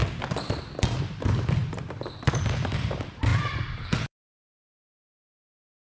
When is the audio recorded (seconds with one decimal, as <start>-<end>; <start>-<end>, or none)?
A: none